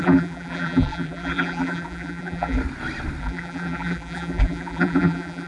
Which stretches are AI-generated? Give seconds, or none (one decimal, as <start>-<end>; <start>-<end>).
0.0-2.6; 3.2-5.5